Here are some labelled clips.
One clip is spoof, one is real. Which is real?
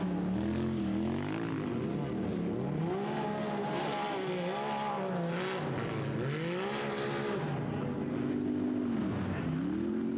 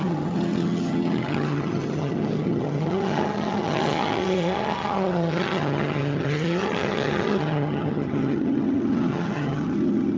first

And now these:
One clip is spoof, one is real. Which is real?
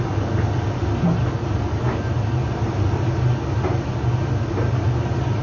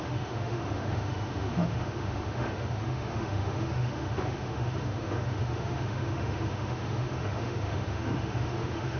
first